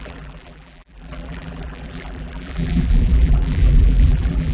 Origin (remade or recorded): remade